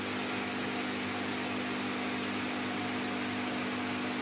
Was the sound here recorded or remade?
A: recorded